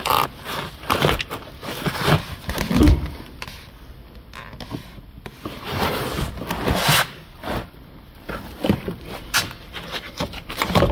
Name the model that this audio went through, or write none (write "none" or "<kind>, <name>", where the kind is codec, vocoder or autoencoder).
none